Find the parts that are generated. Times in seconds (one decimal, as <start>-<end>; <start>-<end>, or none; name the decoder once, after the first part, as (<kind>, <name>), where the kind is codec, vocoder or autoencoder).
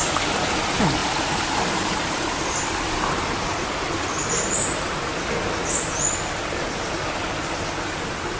1.0-3.2 (vocoder, BigVGAN v2)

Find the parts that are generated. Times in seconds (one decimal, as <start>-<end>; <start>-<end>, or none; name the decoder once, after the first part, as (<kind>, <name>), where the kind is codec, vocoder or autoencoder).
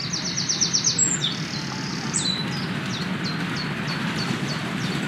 1.9-2.4 (vocoder, BigVGAN v2); 4.2-5.1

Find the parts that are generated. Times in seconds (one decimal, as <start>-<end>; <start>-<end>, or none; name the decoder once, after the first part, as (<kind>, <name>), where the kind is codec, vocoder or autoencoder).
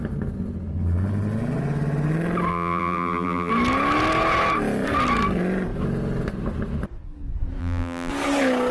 2.5-3.5 (vocoder, BigVGAN v2); 7.6-8.1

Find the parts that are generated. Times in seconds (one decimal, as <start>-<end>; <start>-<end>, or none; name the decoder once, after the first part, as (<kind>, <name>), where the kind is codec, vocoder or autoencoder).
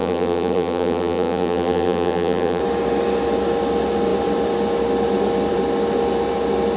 0.0-2.6 (vocoder, BigVGAN v2)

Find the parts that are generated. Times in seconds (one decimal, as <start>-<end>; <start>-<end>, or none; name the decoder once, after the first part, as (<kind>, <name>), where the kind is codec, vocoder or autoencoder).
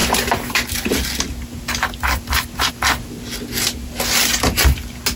none